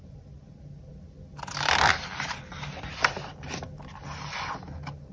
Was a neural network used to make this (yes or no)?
no